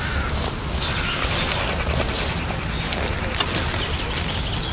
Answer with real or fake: real